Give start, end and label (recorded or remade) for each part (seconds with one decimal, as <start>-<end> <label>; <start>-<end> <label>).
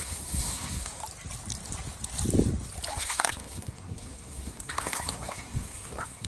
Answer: 0.0-1.0 remade; 1.0-2.9 recorded; 2.9-6.3 remade